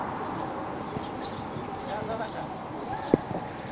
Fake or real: real